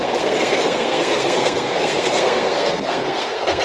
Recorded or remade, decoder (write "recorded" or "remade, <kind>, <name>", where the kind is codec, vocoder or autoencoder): remade, codec, SNAC